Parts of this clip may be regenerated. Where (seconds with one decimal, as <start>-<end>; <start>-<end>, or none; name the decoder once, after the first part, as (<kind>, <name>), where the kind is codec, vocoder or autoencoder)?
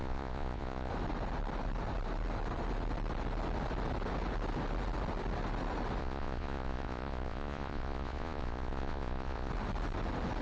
0.0-0.9 (vocoder, Vocos); 6.0-9.5